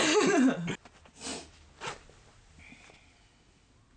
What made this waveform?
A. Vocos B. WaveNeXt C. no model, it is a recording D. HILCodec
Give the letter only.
C